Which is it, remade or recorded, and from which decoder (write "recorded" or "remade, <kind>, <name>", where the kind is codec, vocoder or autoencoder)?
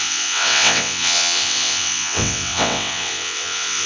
remade, vocoder, WaveNeXt